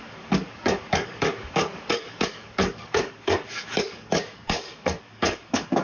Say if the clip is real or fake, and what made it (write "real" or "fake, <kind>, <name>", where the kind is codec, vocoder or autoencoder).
fake, codec, DAC